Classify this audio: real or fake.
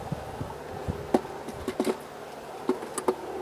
real